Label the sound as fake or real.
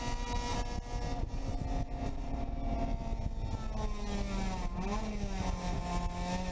real